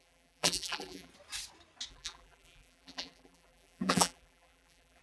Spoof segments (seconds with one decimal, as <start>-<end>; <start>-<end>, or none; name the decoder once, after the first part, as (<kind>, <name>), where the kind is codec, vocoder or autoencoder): 0.0-1.1 (vocoder, BigVGAN v2); 1.9-5.0